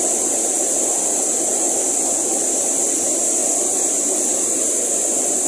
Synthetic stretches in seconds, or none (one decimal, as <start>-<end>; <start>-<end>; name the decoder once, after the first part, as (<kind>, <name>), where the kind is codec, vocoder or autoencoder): none